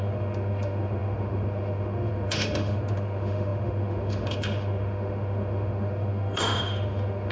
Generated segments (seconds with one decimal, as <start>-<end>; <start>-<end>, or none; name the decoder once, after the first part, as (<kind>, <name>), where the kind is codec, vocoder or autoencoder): 0.0-7.3 (autoencoder, DAC-VAE)